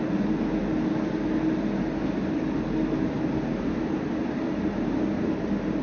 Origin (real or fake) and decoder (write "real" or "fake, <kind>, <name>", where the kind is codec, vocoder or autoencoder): real